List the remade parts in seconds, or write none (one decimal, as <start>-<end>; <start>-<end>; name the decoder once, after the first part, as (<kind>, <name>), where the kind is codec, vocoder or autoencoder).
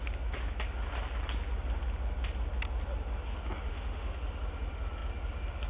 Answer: 3.7-4.2 (autoencoder, DAC-VAE)